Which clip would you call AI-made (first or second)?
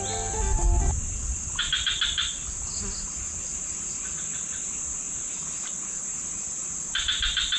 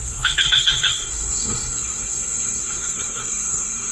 second